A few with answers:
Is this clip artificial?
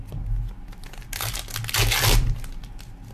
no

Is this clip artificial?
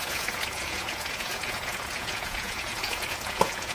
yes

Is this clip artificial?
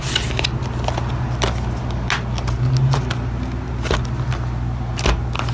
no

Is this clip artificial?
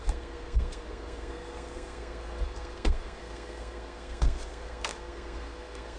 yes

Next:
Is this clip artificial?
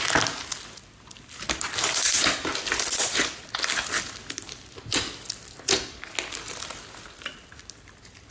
no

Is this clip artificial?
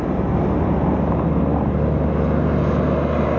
no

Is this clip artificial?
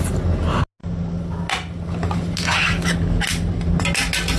no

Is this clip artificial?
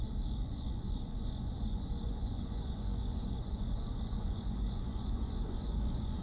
yes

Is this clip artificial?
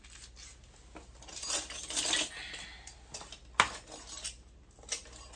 no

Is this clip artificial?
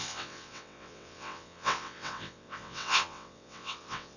yes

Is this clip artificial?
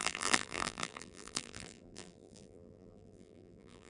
yes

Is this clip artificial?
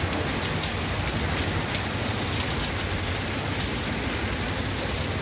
no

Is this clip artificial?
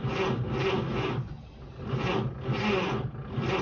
no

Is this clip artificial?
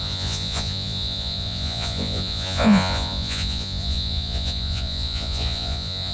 yes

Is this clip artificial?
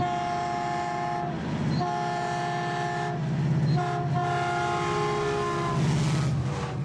no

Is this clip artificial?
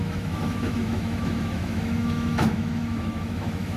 yes